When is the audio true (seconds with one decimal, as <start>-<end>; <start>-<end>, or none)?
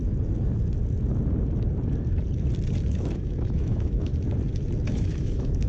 0.0-2.9; 4.1-4.9